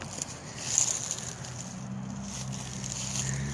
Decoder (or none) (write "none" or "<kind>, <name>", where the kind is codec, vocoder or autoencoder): none